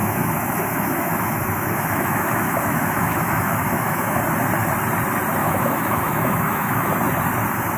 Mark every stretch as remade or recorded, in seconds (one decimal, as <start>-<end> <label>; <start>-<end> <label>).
0.0-4.2 remade; 4.2-5.4 recorded; 5.4-6.9 remade; 6.9-7.8 recorded